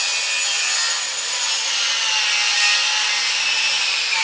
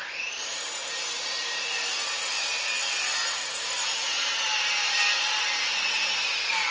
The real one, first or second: first